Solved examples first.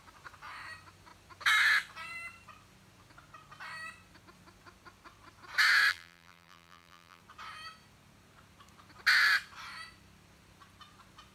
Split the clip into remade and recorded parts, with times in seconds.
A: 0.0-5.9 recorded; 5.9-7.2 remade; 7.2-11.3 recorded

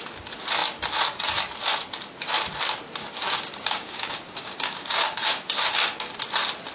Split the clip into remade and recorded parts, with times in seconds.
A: 0.0-3.0 recorded; 3.0-5.6 remade; 5.6-6.7 recorded

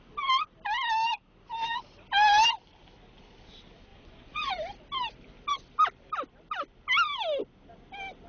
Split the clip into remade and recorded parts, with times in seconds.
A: 0.0-3.9 recorded; 3.9-4.5 remade; 4.5-8.3 recorded

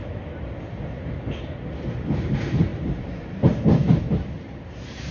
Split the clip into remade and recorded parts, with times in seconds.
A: 0.0-2.7 recorded; 2.7-4.0 remade; 4.0-5.1 recorded

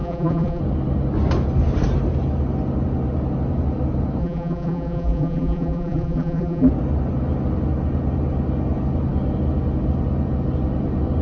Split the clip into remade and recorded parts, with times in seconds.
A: 0.0-0.6 remade; 0.6-4.2 recorded; 4.2-6.7 remade; 6.7-11.2 recorded

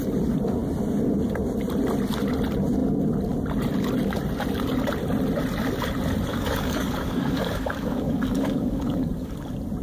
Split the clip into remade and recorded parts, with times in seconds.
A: 0.0-6.3 recorded; 6.3-9.3 remade; 9.3-9.8 recorded

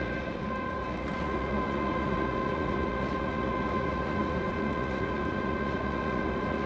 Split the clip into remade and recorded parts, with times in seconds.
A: 0.0-6.7 remade